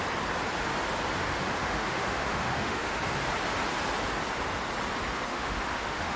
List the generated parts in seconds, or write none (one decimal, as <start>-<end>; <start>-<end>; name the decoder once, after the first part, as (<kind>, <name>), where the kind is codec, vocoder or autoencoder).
1.6-3.0 (autoencoder, DAC-VAE); 5.3-6.2

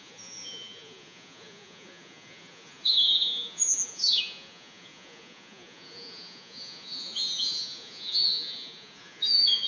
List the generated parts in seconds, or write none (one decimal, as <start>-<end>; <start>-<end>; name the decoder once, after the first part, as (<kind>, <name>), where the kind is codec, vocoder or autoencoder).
0.0-9.7 (vocoder, Vocos)